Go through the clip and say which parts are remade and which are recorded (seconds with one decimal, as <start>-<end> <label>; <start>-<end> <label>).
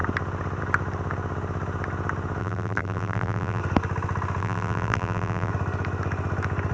0.0-2.4 recorded; 2.4-3.6 remade; 3.6-4.4 recorded; 4.4-5.5 remade; 5.5-6.7 recorded